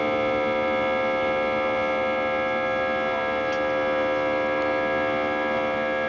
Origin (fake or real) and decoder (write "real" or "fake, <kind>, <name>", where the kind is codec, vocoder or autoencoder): real